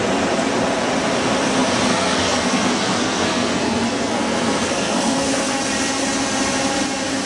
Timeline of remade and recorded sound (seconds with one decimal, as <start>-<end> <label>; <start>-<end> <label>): 0.0-1.9 recorded; 1.9-5.6 remade; 5.6-7.3 recorded